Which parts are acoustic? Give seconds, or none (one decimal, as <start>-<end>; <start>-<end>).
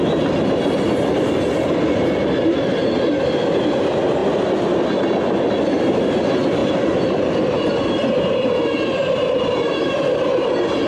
0.0-6.6; 7.7-10.9